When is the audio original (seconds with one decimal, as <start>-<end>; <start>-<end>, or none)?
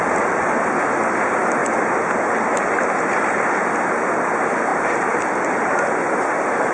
0.0-4.7; 5.4-6.7